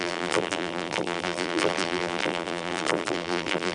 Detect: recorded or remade remade